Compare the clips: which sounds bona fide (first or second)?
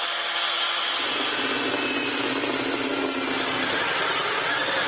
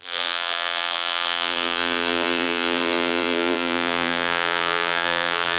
first